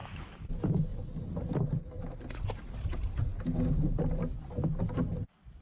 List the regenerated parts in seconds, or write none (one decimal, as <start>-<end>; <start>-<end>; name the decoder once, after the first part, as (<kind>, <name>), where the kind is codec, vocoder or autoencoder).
0.0-0.5 (vocoder, BigVGAN v2)